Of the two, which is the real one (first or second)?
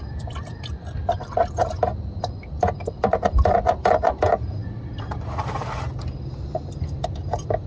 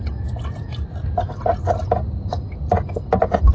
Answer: second